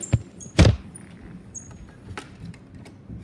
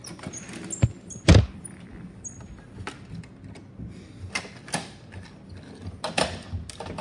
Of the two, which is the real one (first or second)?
second